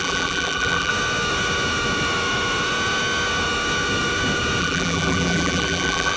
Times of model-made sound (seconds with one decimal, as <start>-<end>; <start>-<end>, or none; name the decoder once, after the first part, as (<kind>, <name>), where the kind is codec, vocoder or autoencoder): 0.0-0.9 (vocoder, BigVGAN v2); 4.6-6.2